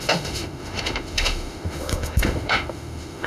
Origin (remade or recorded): remade